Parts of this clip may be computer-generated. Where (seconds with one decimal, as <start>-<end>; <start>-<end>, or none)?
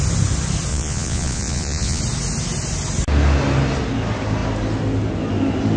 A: 0.7-2.0